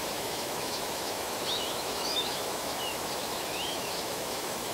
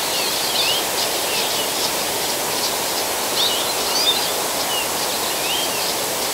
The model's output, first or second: first